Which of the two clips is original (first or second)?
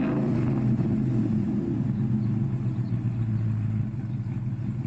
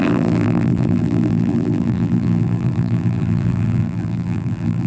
first